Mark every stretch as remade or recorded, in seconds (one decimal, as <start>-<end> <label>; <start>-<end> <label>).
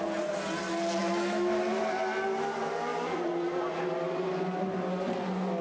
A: 0.0-1.0 recorded; 1.0-1.8 remade; 1.8-5.6 recorded